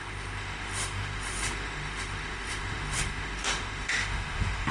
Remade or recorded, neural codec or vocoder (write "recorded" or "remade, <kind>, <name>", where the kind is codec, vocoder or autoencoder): remade, autoencoder, DAC-VAE